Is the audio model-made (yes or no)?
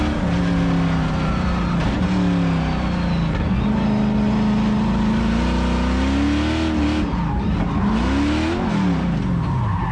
no